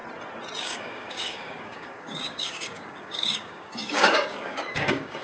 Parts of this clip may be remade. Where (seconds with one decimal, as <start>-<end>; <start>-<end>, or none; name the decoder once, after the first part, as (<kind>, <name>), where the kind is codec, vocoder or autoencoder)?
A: 0.6-5.2 (codec, DAC)